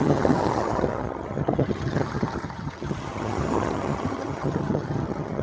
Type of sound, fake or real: fake